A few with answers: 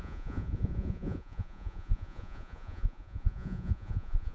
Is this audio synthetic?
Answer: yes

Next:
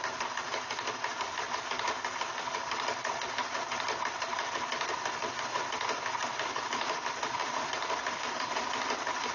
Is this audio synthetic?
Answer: no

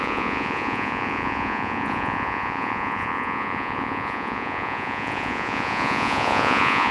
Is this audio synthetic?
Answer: yes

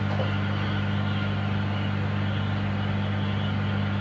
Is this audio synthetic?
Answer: no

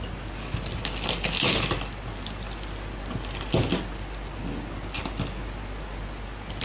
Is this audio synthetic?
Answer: no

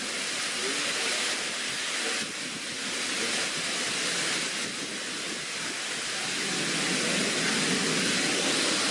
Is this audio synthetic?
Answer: no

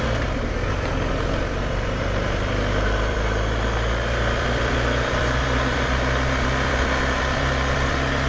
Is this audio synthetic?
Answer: yes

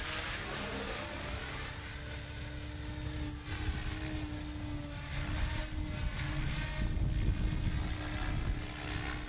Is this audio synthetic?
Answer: no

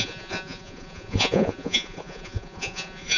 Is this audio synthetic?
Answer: yes